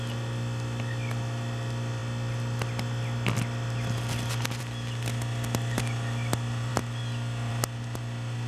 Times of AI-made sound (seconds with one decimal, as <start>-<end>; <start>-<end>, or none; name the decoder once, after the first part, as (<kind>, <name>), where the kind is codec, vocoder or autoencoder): none